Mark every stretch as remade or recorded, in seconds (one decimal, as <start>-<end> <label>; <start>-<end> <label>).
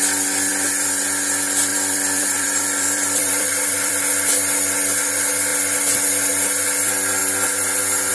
0.0-0.5 recorded; 0.5-1.0 remade; 1.0-1.7 recorded; 1.7-3.9 remade; 3.9-8.1 recorded